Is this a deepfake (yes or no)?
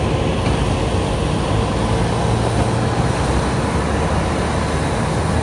no